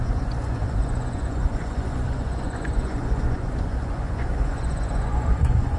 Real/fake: fake